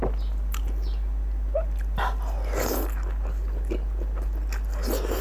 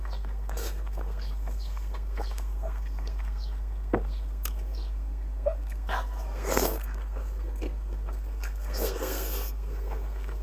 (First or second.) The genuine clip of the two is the first